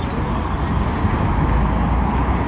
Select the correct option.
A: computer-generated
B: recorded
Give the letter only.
B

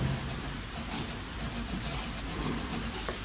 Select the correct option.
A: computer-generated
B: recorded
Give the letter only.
B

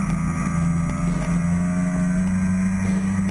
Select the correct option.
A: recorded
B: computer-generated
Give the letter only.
A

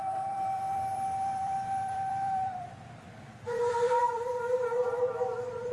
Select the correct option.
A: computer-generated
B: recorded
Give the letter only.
A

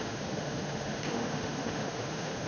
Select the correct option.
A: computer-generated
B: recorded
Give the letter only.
A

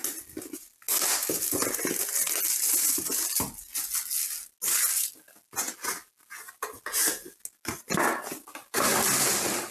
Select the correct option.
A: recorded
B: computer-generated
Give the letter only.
A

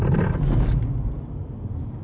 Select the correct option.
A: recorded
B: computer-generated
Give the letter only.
A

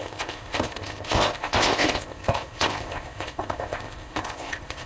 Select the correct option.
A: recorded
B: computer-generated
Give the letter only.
B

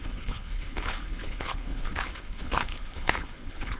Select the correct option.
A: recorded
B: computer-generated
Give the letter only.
B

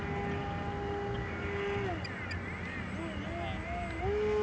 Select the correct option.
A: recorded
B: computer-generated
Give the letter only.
A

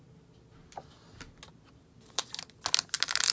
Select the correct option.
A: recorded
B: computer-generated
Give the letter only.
A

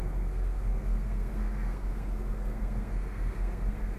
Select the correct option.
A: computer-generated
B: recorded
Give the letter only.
A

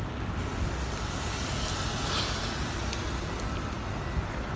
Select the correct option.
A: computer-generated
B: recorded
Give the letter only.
B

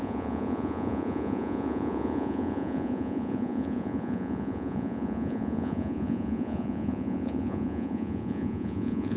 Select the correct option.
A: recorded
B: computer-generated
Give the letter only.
B